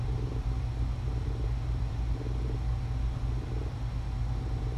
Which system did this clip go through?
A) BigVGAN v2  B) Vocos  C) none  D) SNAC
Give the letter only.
C